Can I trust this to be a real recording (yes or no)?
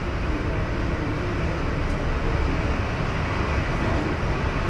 yes